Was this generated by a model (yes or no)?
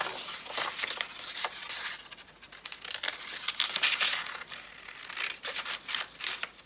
no